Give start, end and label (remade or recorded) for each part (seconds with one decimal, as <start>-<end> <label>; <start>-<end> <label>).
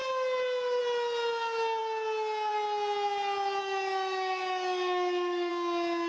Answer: 0.0-3.6 recorded; 3.6-5.5 remade; 5.5-6.1 recorded